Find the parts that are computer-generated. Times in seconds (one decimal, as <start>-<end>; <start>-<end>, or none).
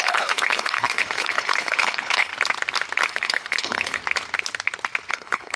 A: 0.0-2.3; 3.1-4.0; 5.1-5.6